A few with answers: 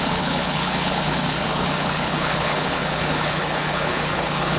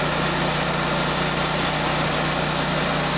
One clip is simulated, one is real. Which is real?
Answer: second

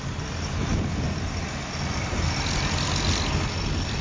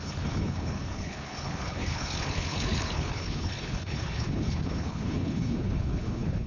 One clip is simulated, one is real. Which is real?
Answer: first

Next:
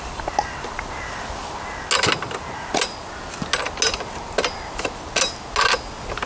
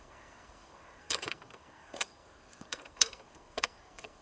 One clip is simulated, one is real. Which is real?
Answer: first